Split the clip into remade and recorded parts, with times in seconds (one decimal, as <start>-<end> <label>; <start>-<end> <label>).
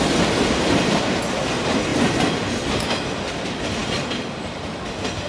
0.0-5.3 recorded